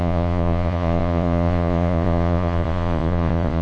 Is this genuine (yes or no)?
no